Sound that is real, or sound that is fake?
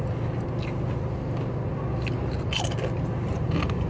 real